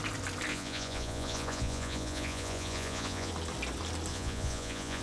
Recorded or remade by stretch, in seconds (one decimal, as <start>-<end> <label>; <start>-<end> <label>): 0.0-0.5 recorded; 0.5-3.3 remade; 3.3-4.1 recorded; 4.1-5.0 remade